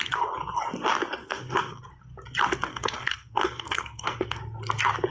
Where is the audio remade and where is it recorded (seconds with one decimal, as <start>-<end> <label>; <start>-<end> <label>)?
0.0-1.2 recorded; 1.2-1.8 remade; 1.8-2.7 recorded; 2.7-4.4 remade; 4.4-5.1 recorded